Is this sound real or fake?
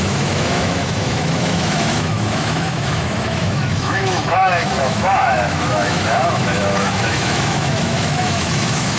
fake